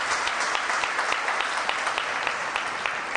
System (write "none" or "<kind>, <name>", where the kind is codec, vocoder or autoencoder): none